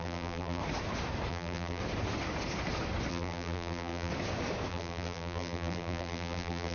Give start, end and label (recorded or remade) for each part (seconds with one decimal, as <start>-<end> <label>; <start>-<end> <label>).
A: 0.0-0.6 remade; 0.6-1.3 recorded; 1.3-1.8 remade; 1.8-3.1 recorded; 3.1-4.1 remade; 4.1-4.7 recorded; 4.7-6.7 remade